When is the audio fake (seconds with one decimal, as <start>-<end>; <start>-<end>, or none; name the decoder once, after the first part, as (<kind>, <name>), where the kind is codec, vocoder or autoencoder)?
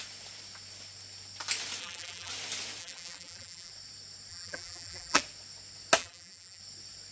1.8-2.3 (vocoder, BigVGAN v2); 2.8-3.7; 4.3-5.2; 6.0-6.6